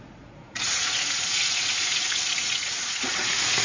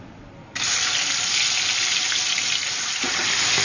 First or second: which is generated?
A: first